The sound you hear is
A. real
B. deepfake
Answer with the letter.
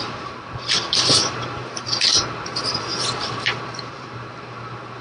B